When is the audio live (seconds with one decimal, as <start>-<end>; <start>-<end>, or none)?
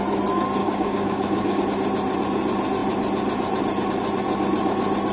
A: 0.0-0.6; 1.6-5.1